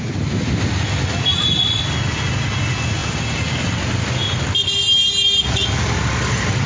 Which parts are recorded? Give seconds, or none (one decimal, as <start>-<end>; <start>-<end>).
0.0-6.7